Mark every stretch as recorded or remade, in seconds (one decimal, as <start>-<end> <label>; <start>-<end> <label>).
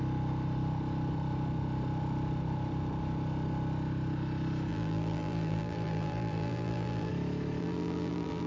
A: 0.0-4.7 recorded; 4.7-7.1 remade; 7.1-7.6 recorded; 7.6-8.5 remade